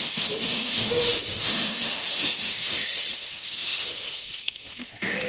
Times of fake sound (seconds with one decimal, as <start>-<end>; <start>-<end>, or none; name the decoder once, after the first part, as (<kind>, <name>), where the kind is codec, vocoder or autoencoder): 0.0-5.3 (autoencoder, DAC-VAE)